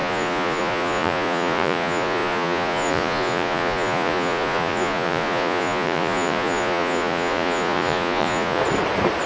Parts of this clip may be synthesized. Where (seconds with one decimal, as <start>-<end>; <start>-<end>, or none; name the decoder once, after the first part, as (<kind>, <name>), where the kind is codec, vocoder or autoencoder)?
0.0-8.6 (vocoder, Vocos)